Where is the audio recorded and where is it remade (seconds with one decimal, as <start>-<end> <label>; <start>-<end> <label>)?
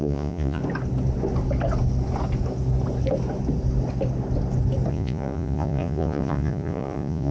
0.0-0.6 remade; 0.6-4.9 recorded; 4.9-7.3 remade